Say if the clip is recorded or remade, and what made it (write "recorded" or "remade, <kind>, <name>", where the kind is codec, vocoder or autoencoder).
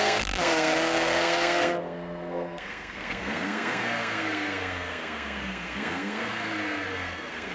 remade, codec, SNAC